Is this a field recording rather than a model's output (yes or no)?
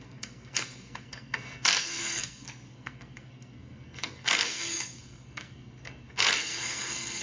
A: no